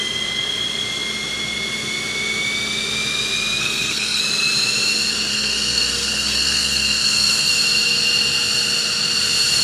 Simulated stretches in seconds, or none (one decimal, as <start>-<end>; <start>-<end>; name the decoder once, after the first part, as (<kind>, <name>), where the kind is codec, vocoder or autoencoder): 3.6-4.2 (codec, SNAC); 5.3-7.5